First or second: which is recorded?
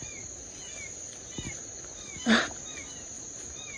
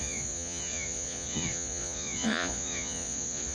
first